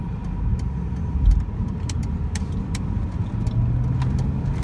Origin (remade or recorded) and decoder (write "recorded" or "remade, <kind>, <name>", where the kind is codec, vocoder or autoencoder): recorded